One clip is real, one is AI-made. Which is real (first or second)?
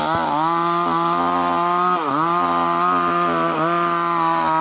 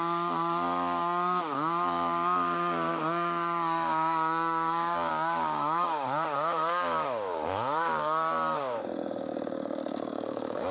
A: first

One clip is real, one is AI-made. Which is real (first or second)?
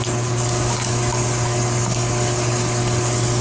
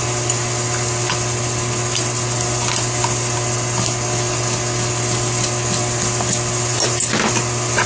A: second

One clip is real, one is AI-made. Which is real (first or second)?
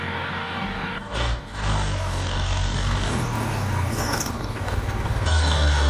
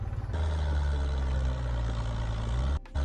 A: second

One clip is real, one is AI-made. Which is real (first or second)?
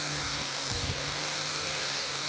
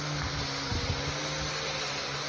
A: second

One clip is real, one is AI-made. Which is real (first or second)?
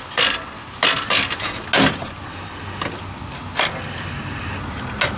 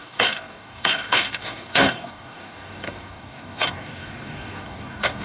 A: first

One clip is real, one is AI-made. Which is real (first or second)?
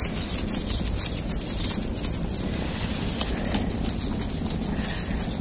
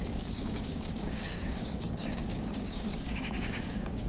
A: first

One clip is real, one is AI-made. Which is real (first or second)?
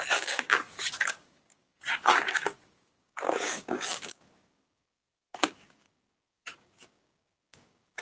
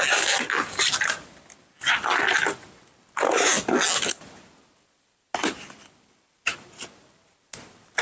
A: second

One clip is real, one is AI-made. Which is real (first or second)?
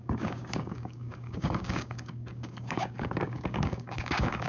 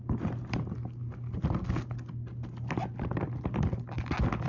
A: second